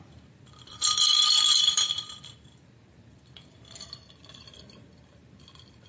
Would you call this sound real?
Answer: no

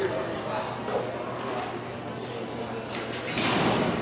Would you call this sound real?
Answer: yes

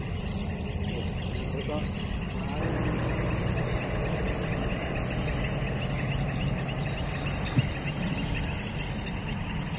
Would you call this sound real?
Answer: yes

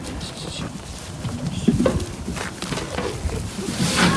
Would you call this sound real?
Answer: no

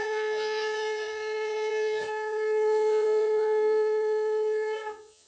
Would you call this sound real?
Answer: no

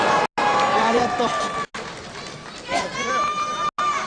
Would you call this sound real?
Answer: yes